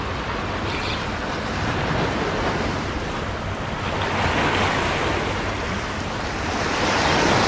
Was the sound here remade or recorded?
recorded